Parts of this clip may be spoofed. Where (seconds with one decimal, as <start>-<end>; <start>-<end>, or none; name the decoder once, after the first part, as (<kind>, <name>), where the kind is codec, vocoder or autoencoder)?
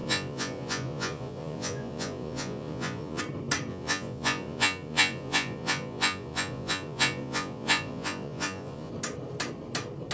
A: 0.0-3.2 (vocoder, Vocos); 3.7-8.9